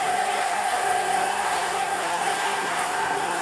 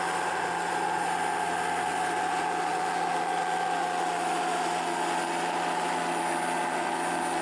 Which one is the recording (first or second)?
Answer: second